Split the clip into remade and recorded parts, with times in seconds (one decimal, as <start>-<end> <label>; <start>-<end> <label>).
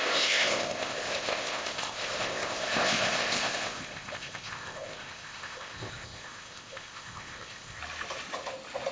0.0-7.8 remade; 7.8-8.9 recorded